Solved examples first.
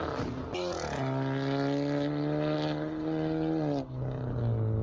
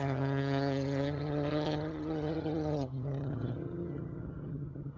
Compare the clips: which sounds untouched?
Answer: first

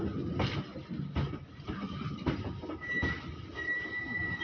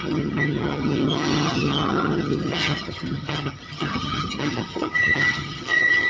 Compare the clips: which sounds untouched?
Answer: first